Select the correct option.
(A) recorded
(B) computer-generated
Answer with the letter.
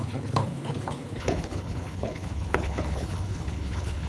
B